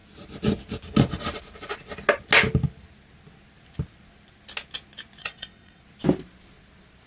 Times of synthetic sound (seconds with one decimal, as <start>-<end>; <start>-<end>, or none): 5.2-5.8